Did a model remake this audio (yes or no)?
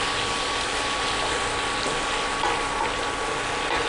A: no